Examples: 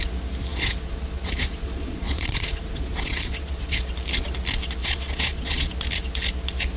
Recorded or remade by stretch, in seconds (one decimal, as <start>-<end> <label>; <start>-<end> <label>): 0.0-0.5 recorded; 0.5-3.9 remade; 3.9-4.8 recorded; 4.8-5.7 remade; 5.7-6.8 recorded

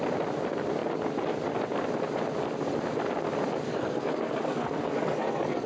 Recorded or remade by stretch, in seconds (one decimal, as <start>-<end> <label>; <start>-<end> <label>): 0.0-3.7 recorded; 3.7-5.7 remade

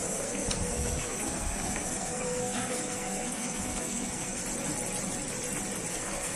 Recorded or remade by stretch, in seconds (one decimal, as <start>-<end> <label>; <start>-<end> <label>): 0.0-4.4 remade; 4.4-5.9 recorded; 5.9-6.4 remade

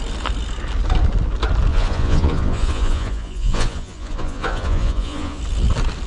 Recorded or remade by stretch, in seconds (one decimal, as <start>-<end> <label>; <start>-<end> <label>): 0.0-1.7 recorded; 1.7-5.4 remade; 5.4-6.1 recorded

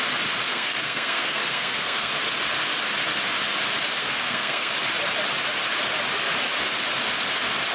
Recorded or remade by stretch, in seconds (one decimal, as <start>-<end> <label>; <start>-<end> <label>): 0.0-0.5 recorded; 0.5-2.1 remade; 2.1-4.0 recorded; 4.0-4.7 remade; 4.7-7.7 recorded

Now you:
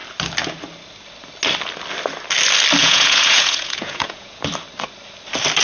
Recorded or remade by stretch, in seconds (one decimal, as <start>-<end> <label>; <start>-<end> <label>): 0.0-2.8 recorded; 2.8-4.4 remade; 4.4-5.6 recorded